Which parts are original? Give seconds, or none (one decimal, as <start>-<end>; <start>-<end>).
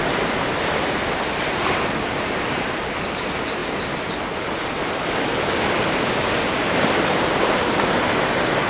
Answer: 0.0-8.7